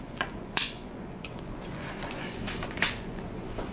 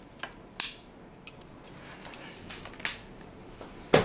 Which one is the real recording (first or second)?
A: second